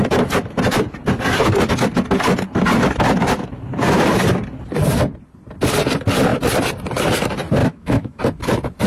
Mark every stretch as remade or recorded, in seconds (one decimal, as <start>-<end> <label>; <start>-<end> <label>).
0.0-7.6 recorded; 7.6-8.2 remade; 8.2-8.9 recorded

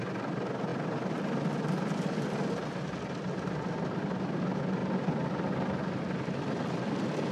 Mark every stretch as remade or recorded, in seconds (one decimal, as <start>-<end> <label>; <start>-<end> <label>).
0.0-7.3 recorded

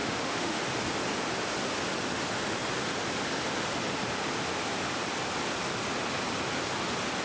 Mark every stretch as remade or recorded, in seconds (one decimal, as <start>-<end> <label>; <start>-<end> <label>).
0.0-0.6 remade; 0.6-7.2 recorded

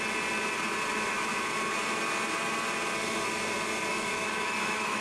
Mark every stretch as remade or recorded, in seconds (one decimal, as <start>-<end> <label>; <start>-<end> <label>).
0.0-0.9 recorded; 0.9-1.5 remade; 1.5-3.9 recorded; 3.9-5.0 remade

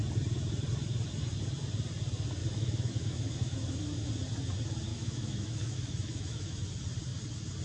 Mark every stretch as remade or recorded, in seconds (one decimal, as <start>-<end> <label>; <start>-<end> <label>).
0.0-2.4 recorded; 2.4-4.1 remade; 4.1-4.9 recorded; 4.9-6.6 remade; 6.6-7.6 recorded

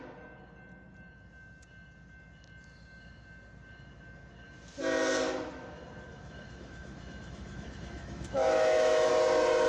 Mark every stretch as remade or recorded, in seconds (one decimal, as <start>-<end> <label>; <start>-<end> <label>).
0.0-6.1 recorded; 6.1-9.1 remade; 9.1-9.7 recorded

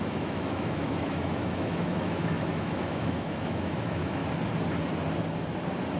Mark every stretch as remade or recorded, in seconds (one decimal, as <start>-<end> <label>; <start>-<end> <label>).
0.0-4.2 remade; 4.2-6.0 recorded

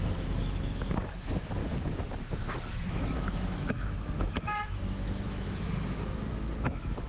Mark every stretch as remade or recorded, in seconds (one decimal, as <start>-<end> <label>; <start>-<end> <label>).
0.0-1.6 remade; 1.6-2.7 recorded; 2.7-7.1 remade